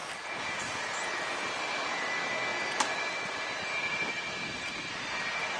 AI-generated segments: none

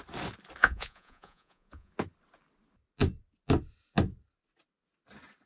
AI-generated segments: 0.6-1.9 (vocoder, Vocos)

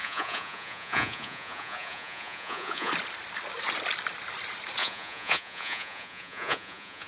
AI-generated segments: 0.0-2.9 (vocoder, Vocos); 4.8-7.1

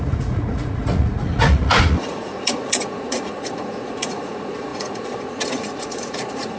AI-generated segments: 0.0-6.6 (vocoder, Vocos)

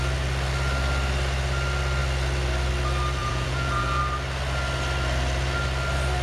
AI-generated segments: 3.2-4.0 (vocoder, Vocos)